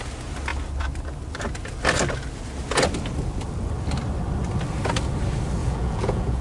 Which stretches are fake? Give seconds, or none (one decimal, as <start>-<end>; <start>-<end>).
5.6-6.4